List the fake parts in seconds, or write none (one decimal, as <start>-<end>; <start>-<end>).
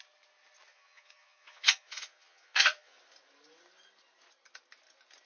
0.7-3.0